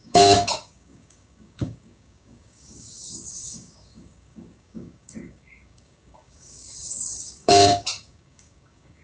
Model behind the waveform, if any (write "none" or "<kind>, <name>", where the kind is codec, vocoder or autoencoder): codec, DAC